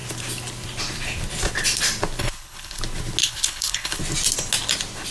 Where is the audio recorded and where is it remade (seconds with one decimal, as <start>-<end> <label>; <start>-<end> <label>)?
0.0-2.2 recorded; 2.2-2.8 remade; 2.8-3.2 recorded; 3.2-4.0 remade; 4.0-5.1 recorded